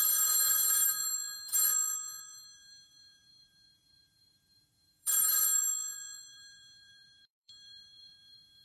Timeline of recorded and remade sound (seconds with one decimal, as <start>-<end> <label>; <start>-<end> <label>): 0.0-8.6 remade